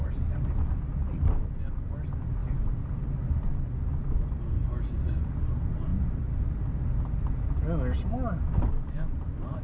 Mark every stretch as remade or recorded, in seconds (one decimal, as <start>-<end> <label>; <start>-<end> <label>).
0.0-9.6 recorded